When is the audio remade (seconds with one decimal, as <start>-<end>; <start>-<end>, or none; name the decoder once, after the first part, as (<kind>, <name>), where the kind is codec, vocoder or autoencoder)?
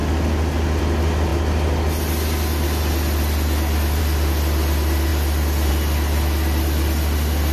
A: none